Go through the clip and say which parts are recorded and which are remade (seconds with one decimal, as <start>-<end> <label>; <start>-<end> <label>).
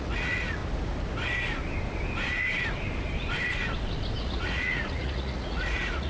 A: 0.0-0.6 remade; 0.6-4.2 recorded; 4.2-6.1 remade